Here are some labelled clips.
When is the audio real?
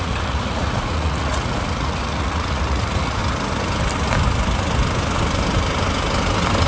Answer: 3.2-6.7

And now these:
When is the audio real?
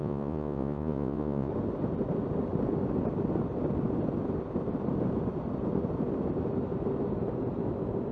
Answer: 1.5-8.1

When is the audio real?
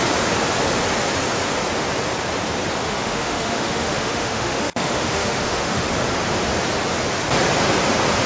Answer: 0.0-2.8; 5.9-8.3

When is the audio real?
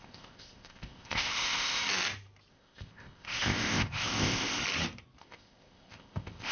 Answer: 1.8-2.5; 4.6-5.2